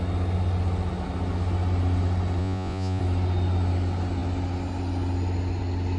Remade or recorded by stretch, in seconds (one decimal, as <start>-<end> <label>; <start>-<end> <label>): 0.0-2.4 recorded; 2.4-3.0 remade; 3.0-6.0 recorded